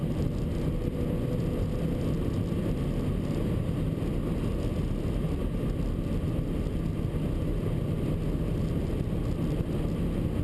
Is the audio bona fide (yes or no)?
yes